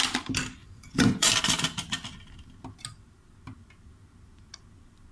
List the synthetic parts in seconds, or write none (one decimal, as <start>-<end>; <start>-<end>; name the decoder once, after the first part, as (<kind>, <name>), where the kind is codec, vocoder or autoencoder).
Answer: 0.6-1.3 (vocoder, Vocos)